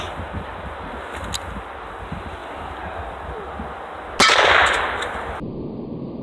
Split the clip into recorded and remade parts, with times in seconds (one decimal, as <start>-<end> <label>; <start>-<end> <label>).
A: 0.0-6.2 recorded